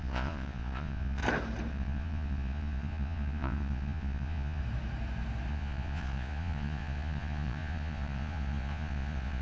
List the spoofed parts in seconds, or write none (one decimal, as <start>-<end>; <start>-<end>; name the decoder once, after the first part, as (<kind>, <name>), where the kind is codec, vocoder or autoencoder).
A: 0.0-1.2 (vocoder, Vocos); 1.7-4.6; 5.5-9.4